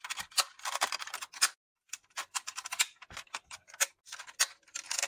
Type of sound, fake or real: real